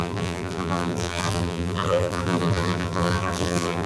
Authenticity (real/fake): fake